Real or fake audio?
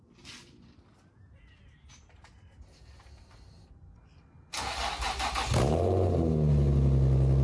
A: real